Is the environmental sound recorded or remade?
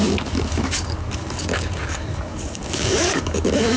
remade